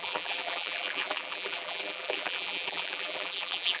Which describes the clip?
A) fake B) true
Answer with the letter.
A